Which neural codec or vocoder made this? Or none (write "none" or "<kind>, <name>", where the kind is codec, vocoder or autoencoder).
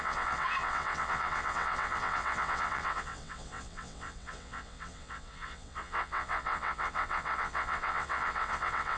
vocoder, WaveNeXt